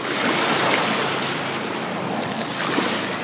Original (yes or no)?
yes